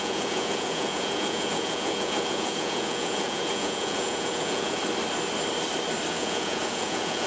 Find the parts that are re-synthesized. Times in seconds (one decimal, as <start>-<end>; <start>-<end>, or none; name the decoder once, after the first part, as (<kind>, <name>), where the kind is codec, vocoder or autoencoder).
0.0-4.8 (vocoder, Vocos); 6.1-7.3